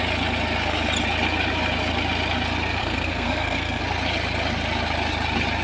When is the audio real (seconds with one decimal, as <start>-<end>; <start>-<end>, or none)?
0.0-2.8; 3.8-5.6